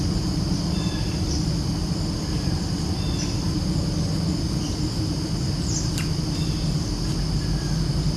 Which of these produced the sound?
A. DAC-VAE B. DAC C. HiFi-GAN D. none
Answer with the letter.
D